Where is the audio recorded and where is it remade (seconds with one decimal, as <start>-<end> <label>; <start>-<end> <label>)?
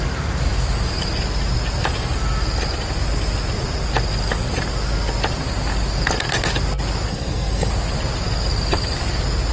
0.0-7.1 recorded; 7.1-7.7 remade; 7.7-9.5 recorded